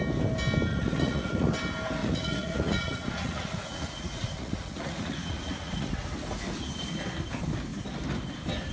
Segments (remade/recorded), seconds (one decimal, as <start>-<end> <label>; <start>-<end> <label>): 0.0-0.7 recorded; 0.7-1.5 remade; 1.5-2.0 recorded; 2.0-5.9 remade; 5.9-8.7 recorded